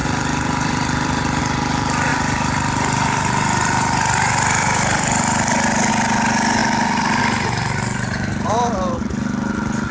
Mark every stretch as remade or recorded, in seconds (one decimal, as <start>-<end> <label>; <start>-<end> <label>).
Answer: 0.0-1.4 remade; 1.4-2.1 recorded; 2.1-5.9 remade; 5.9-6.6 recorded; 6.6-7.2 remade; 7.2-9.9 recorded